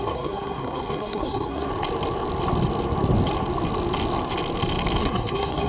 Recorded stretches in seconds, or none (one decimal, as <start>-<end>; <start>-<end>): 1.7-5.0